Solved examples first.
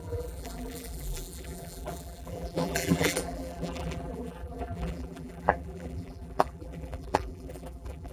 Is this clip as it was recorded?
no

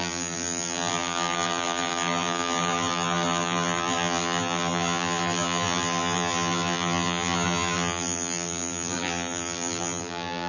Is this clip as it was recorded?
no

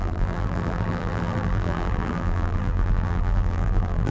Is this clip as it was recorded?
no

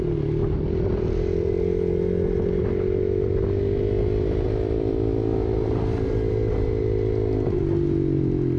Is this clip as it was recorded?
yes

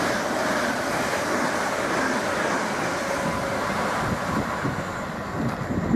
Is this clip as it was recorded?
yes